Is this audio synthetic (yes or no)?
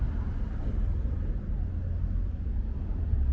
no